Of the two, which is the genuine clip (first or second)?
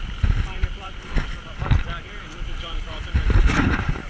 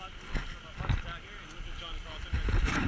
second